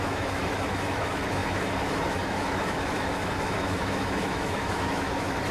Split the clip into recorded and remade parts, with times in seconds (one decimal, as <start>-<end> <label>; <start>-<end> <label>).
0.0-5.5 remade